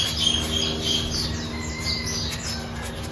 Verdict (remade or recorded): recorded